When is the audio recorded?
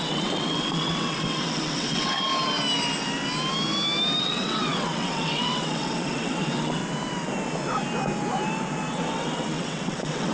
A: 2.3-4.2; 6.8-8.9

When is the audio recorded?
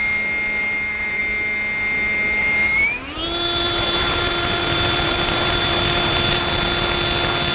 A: 0.0-0.6; 1.2-2.4; 6.5-7.5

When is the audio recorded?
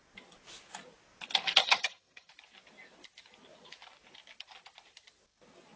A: 0.0-1.6; 2.3-5.8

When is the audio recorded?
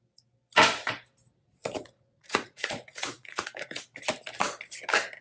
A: 0.0-1.4; 3.8-5.2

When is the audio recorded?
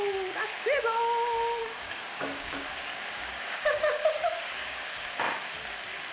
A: 0.0-1.6; 5.2-6.1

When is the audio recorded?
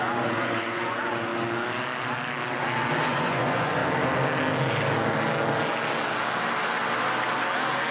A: 1.3-3.1; 3.8-7.9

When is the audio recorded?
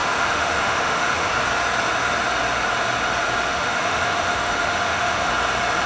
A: 1.3-3.5; 5.3-5.9